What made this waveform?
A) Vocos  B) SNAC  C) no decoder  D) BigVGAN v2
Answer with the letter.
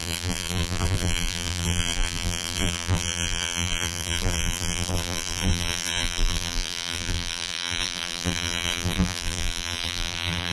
D